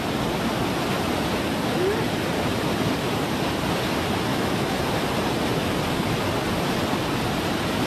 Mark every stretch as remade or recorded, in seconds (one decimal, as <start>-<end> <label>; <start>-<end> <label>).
0.0-4.3 recorded; 4.3-4.8 remade; 4.8-7.9 recorded